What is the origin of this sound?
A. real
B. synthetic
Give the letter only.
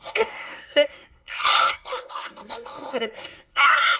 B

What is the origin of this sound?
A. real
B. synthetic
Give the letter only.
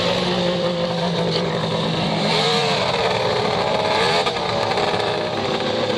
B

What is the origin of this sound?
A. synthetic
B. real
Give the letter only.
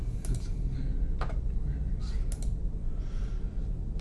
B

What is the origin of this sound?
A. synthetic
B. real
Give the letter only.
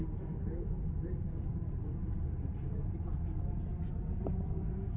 A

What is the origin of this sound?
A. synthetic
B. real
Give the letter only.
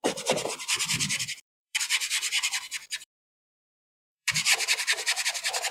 A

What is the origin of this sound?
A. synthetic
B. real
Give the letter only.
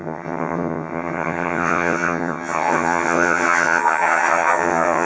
A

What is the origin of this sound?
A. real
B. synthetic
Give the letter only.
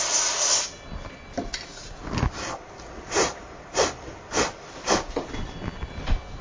A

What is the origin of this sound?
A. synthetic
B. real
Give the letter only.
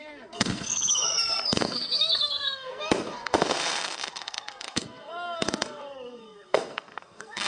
A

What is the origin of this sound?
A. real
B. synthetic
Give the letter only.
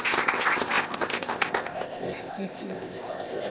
B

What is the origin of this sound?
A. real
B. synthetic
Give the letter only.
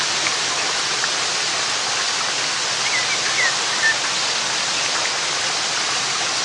A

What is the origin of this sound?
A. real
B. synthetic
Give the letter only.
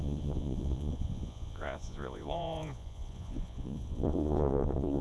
B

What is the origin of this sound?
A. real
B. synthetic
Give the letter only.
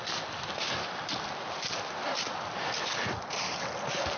A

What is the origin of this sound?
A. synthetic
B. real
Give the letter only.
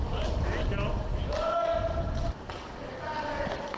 B